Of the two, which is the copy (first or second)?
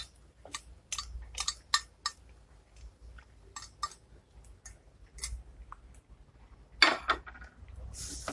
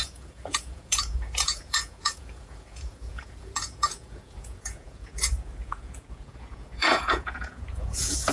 second